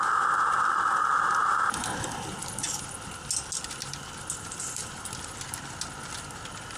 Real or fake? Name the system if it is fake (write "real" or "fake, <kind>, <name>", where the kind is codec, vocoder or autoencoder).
real